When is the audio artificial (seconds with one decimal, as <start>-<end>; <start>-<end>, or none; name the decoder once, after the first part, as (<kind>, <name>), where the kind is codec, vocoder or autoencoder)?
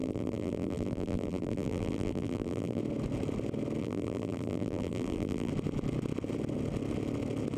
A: 0.0-2.8 (vocoder, BigVGAN v2); 3.8-5.5